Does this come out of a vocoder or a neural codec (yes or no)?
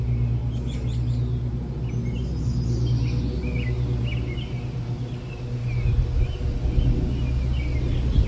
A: no